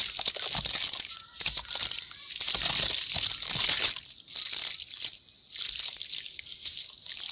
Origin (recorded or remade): recorded